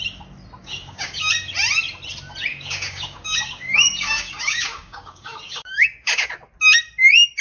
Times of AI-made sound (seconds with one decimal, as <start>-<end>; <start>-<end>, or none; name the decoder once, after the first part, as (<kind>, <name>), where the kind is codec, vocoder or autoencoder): 0.6-1.3 (codec, DAC); 2.5-6.3